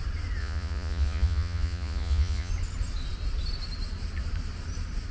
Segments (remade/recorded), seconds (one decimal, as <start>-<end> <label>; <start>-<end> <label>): 0.0-0.4 recorded; 0.4-2.5 remade; 2.5-5.1 recorded